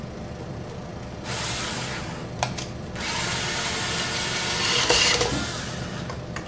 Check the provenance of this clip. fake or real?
real